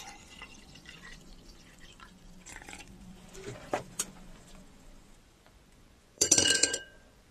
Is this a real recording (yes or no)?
no